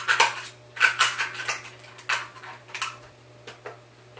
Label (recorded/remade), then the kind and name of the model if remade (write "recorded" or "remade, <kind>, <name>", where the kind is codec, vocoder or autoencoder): recorded